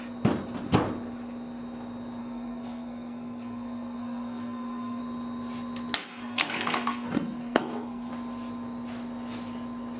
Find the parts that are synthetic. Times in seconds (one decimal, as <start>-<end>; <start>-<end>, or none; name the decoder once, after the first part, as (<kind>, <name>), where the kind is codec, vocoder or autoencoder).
2.2-5.0 (codec, SNAC); 6.0-8.1